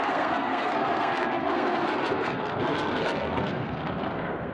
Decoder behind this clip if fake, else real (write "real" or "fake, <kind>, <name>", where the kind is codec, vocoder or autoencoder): fake, codec, SNAC